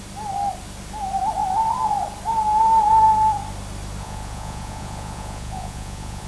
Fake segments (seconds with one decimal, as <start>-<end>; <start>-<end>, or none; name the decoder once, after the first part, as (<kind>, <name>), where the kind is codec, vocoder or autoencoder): 4.0-6.3 (vocoder, Vocos)